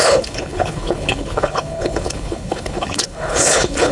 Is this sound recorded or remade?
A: remade